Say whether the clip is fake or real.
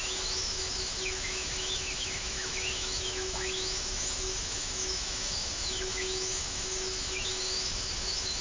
fake